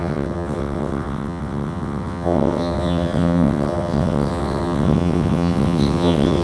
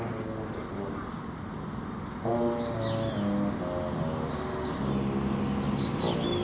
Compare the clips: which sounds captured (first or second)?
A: second